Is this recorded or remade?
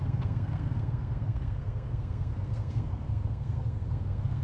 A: remade